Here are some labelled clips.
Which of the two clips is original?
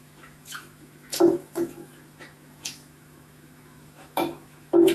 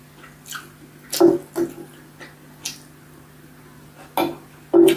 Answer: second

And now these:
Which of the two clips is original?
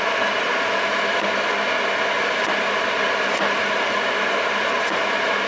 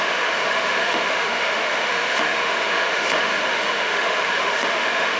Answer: first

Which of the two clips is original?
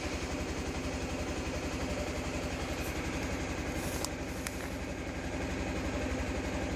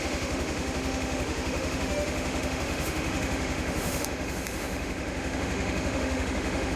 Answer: first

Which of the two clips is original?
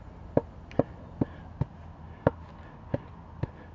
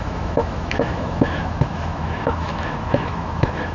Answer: first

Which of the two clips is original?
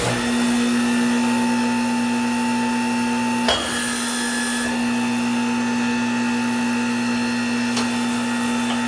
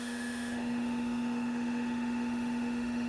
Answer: first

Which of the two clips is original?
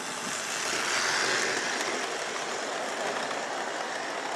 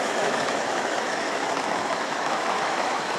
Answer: first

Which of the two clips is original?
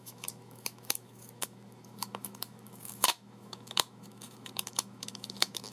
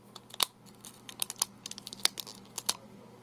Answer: second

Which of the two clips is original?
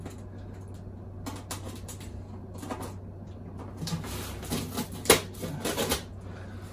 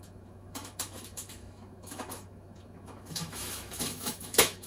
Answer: first